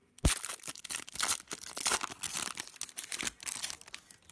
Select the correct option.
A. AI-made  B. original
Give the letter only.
B